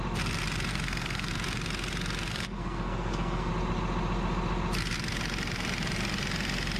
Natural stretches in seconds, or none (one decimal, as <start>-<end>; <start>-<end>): 0.0-0.7; 1.3-2.3; 3.5-6.8